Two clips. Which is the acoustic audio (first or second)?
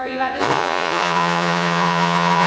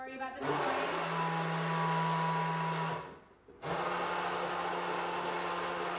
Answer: second